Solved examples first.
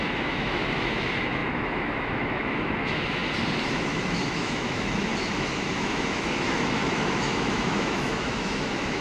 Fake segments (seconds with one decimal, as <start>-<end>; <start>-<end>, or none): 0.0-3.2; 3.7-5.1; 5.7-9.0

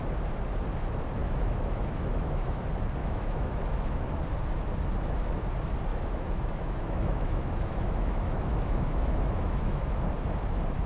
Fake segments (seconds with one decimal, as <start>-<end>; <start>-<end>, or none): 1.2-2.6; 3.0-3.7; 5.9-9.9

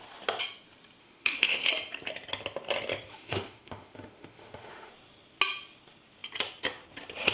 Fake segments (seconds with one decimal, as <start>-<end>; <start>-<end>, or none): 1.0-1.7; 3.1-4.9

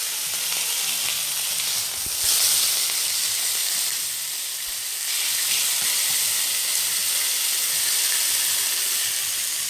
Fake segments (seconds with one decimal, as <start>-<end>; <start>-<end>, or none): none

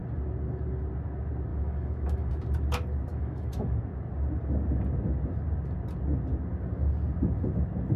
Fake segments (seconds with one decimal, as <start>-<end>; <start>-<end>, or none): 1.5-2.3; 3.1-3.8